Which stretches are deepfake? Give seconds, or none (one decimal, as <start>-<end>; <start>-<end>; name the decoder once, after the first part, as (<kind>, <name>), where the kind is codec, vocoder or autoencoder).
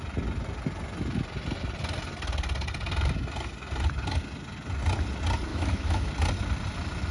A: 5.5-6.1 (autoencoder, DAC-VAE)